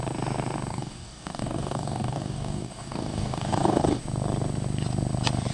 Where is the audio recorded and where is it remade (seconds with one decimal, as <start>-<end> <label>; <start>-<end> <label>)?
0.0-0.7 recorded; 0.7-4.0 remade; 4.0-5.5 recorded